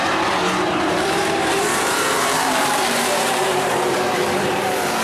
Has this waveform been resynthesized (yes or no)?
yes